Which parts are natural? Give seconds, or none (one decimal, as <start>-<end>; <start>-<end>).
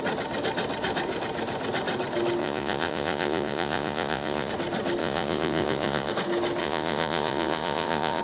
0.0-2.4; 4.5-5.0; 6.1-6.6